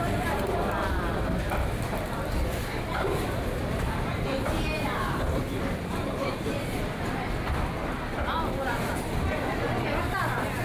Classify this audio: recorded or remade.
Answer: remade